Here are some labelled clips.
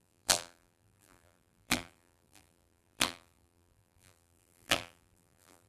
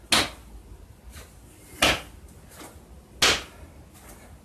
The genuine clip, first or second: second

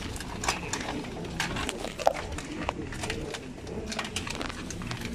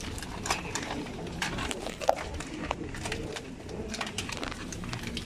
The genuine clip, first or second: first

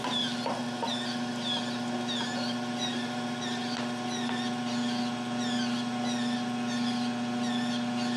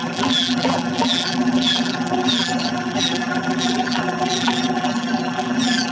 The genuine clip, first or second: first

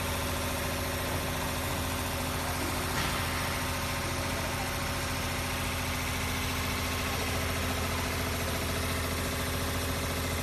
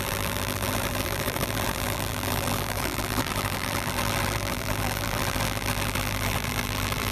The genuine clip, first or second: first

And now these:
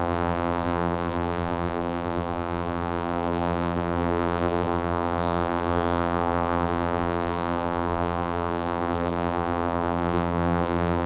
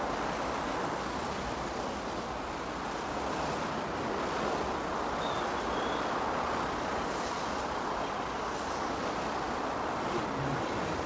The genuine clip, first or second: second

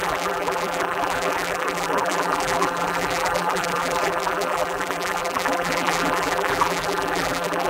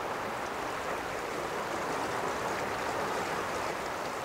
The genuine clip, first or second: second